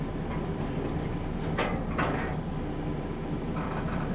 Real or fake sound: real